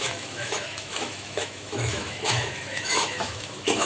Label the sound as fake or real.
fake